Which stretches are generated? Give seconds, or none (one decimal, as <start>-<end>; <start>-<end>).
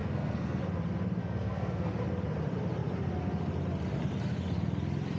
0.0-0.6; 1.2-1.9